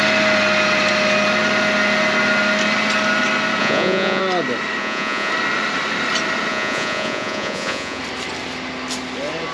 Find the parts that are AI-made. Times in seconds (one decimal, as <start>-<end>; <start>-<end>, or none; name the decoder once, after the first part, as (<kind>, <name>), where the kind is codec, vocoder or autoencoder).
3.6-4.2 (vocoder, Vocos); 4.8-5.3; 6.5-8.0